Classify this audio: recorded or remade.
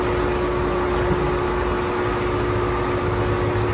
recorded